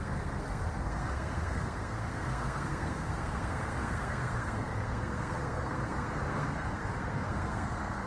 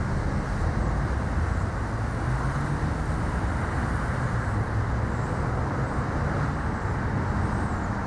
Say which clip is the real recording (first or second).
second